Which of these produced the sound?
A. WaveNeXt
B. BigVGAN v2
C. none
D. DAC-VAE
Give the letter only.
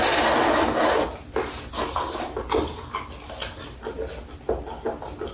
C